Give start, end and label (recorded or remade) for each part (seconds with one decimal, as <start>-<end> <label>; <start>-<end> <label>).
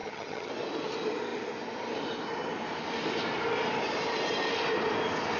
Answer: 0.0-0.5 remade; 0.5-5.4 recorded